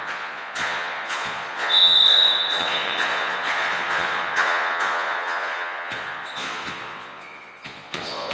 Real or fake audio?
fake